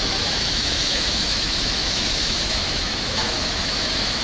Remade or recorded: remade